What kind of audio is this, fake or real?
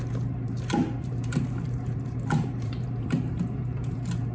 fake